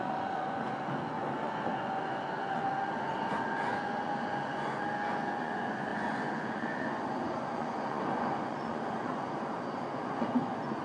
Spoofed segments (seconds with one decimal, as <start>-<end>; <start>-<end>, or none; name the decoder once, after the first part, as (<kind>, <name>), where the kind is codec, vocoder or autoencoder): 0.0-10.8 (vocoder, Vocos)